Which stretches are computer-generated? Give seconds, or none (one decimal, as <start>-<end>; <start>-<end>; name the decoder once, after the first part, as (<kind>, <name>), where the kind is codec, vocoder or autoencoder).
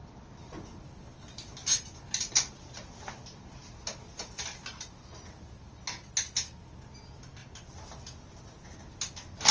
none